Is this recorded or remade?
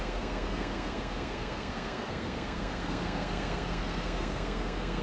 remade